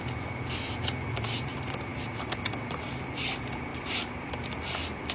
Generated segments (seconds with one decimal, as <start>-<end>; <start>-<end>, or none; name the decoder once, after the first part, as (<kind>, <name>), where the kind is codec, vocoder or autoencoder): 3.7-4.5 (vocoder, BigVGAN v2)